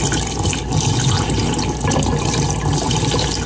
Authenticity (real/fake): real